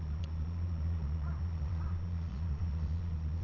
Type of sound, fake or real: fake